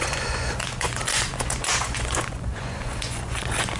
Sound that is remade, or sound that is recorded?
remade